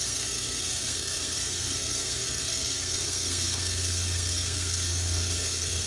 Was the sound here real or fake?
fake